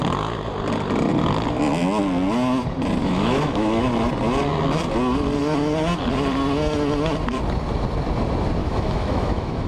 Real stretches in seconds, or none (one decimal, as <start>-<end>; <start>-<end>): 0.0-3.0; 3.8-8.6